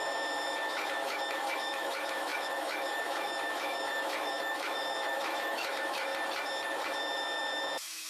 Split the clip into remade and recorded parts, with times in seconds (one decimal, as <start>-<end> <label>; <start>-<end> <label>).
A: 0.0-6.1 remade; 6.1-7.0 recorded; 7.0-8.1 remade